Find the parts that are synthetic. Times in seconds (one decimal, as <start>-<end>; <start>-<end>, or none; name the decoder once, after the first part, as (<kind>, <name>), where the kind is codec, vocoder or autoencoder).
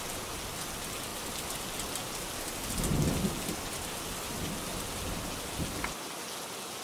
none